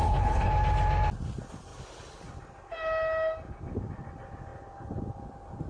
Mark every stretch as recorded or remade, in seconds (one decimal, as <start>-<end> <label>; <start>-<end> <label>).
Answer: 0.0-0.5 remade; 0.5-5.7 recorded